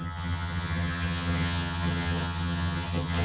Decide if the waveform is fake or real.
fake